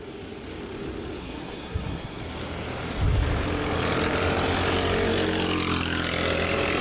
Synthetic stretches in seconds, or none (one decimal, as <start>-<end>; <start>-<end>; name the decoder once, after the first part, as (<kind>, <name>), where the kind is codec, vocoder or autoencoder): 1.2-2.2 (codec, SNAC)